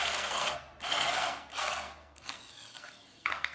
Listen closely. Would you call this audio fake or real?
fake